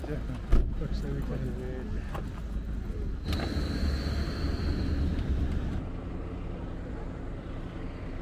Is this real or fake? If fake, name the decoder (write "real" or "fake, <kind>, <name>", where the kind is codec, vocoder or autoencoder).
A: real